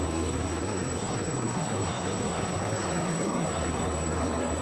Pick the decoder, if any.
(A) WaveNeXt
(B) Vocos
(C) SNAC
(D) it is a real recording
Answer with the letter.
C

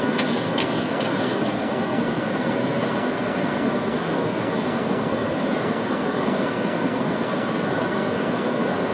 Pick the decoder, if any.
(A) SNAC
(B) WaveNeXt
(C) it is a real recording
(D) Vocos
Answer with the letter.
A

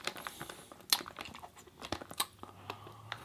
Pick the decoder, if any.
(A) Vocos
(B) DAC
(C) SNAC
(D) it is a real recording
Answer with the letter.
D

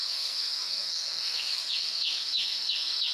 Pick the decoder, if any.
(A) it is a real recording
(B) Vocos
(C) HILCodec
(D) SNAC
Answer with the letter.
D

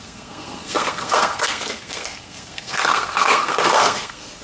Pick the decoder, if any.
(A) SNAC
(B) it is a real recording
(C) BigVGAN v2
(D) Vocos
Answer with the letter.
A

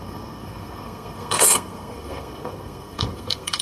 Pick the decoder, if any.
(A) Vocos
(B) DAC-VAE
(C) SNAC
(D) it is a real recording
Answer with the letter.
C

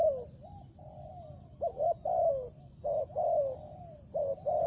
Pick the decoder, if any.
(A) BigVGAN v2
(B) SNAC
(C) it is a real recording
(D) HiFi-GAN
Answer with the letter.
C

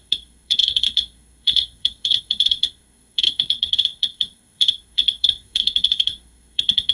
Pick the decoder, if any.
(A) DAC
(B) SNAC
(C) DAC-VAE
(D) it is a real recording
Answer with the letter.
B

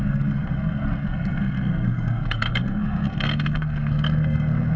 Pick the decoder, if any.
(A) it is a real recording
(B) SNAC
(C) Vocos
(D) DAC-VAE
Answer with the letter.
B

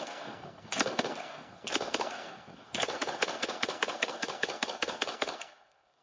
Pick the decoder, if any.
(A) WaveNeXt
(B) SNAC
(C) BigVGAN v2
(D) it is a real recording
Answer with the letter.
B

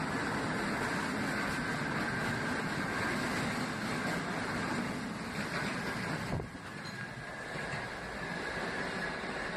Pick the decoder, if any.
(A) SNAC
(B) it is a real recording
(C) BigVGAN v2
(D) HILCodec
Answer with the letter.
B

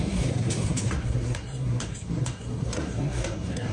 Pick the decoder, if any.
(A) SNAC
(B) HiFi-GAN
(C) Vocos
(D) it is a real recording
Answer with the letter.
A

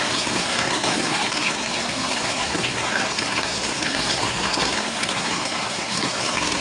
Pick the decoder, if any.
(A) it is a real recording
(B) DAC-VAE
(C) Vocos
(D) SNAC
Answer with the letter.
D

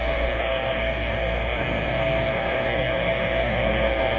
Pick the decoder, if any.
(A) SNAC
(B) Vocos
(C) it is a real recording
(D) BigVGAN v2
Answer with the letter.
A